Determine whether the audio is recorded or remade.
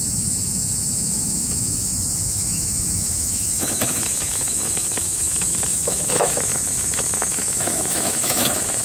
remade